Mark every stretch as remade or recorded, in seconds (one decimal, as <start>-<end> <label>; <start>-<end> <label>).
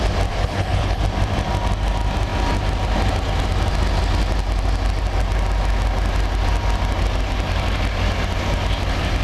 0.0-0.4 recorded; 0.4-1.0 remade; 1.0-9.2 recorded